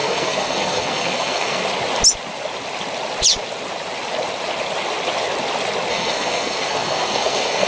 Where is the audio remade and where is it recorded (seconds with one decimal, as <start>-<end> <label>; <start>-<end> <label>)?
0.0-1.6 remade; 1.6-5.9 recorded; 5.9-7.7 remade